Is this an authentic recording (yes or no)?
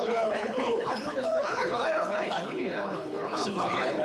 no